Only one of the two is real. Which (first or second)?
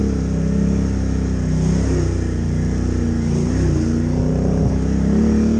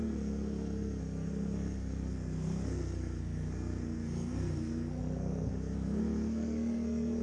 first